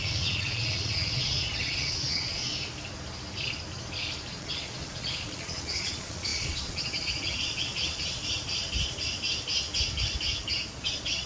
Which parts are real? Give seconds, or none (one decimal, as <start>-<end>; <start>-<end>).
2.5-4.3; 8.2-10.8